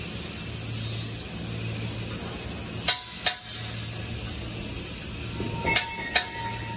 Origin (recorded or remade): recorded